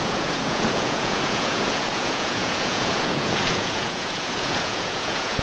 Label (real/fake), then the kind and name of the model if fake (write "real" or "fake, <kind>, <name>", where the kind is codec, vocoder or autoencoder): fake, vocoder, Vocos